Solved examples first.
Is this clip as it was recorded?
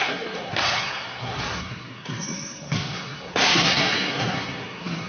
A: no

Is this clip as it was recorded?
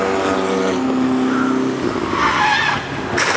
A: yes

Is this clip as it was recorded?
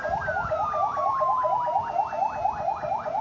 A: yes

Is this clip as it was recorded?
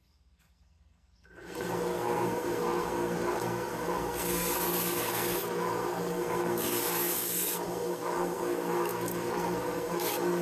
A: no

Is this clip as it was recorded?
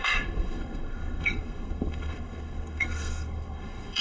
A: no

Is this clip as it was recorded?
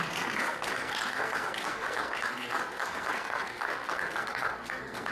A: no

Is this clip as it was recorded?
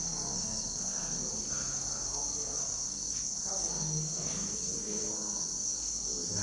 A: no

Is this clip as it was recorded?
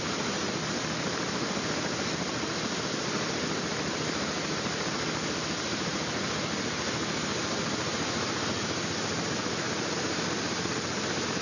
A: yes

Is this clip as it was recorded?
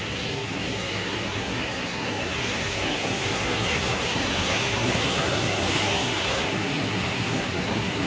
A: no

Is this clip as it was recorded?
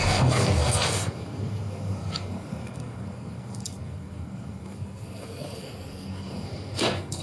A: no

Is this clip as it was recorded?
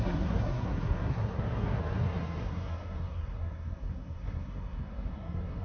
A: no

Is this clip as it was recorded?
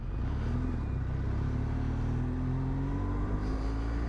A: yes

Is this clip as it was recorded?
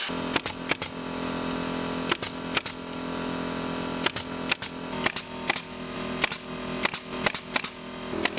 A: yes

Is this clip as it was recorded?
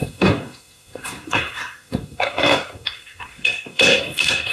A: no